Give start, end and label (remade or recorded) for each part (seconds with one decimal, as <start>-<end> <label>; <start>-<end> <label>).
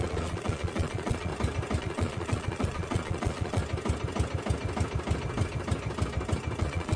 0.0-1.3 remade; 1.3-1.8 recorded; 1.8-3.6 remade; 3.6-6.6 recorded; 6.6-7.0 remade